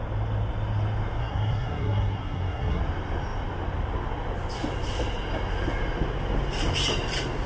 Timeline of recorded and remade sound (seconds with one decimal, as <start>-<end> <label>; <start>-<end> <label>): 0.0-1.2 recorded; 1.2-2.8 remade; 2.8-7.5 recorded